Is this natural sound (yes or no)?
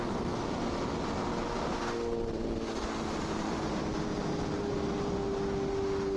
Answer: yes